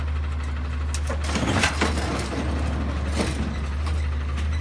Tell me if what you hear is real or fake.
real